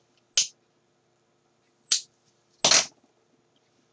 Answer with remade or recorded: recorded